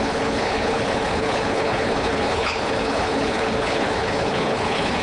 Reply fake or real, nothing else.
fake